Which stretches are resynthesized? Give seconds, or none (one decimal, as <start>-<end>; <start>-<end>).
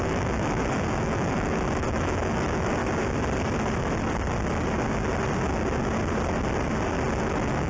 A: 0.0-2.8; 7.2-7.7